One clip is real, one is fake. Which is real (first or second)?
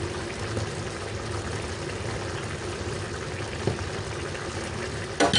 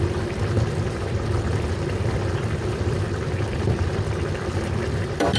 first